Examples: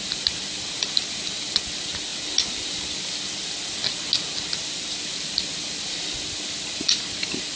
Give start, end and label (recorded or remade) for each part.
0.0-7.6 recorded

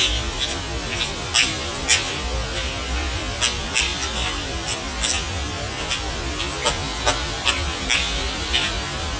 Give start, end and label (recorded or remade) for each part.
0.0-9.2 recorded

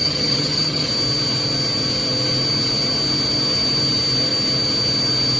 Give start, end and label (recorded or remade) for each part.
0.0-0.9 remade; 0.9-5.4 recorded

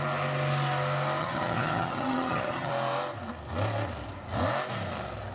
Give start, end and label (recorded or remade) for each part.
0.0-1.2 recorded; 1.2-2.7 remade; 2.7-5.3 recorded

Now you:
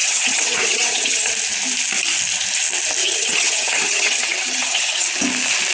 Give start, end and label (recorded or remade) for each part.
0.0-1.3 remade; 1.3-3.0 recorded; 3.0-5.1 remade; 5.1-5.7 recorded

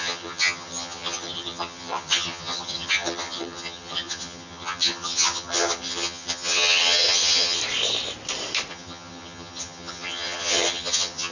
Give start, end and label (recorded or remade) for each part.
0.0-7.6 remade; 7.6-8.7 recorded; 8.7-11.3 remade

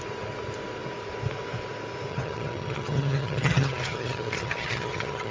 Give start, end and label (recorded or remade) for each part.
0.0-2.1 recorded; 2.1-5.3 remade

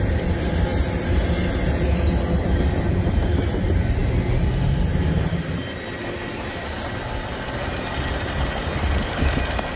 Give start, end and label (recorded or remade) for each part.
0.0-9.8 recorded